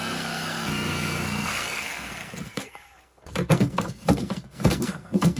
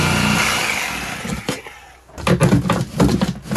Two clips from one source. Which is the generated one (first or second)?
first